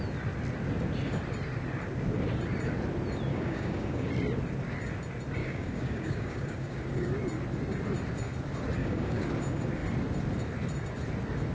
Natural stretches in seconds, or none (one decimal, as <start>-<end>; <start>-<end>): 0.0-3.3; 4.1-5.4; 7.1-8.8; 9.3-11.5